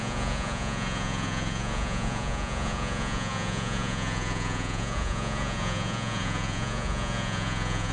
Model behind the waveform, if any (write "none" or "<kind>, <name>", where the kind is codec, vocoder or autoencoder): vocoder, Vocos